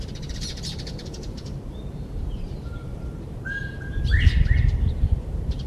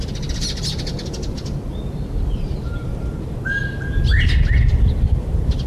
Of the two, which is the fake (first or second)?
first